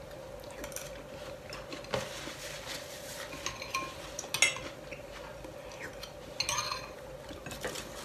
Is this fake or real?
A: real